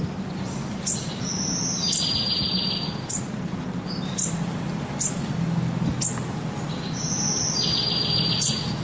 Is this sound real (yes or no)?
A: yes